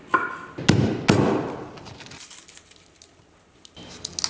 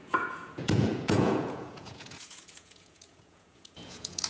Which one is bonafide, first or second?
first